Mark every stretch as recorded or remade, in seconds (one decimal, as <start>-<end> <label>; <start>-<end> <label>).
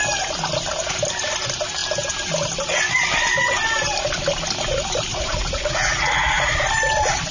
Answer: 0.0-5.1 recorded; 5.1-6.5 remade; 6.5-7.3 recorded